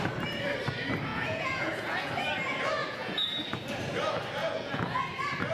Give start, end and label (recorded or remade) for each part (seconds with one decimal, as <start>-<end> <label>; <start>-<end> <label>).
0.0-1.1 recorded; 1.1-2.1 remade; 2.1-2.8 recorded; 2.8-3.4 remade; 3.4-4.4 recorded; 4.4-5.0 remade; 5.0-5.5 recorded